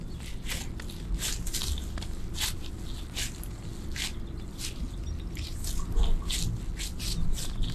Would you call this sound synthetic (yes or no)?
no